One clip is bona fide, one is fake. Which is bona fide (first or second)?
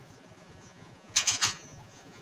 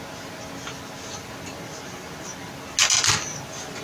second